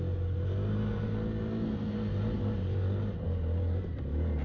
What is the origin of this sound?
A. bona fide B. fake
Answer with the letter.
A